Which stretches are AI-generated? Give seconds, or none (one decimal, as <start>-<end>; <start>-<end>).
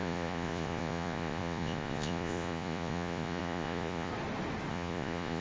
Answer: 0.0-4.1; 4.7-5.4